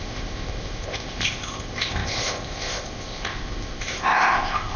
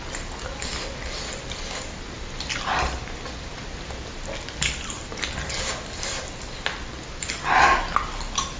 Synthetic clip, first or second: first